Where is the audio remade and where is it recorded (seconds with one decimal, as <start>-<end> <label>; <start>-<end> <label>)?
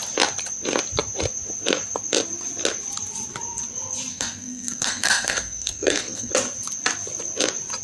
0.0-4.1 recorded; 4.1-6.3 remade; 6.3-7.8 recorded